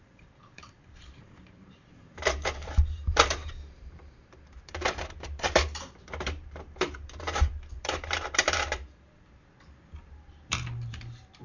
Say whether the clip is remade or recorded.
remade